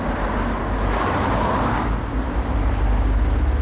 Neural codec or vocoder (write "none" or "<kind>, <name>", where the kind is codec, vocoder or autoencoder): none